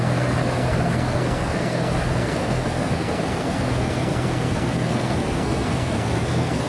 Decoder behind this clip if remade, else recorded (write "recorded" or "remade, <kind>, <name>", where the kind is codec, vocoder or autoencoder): remade, codec, SNAC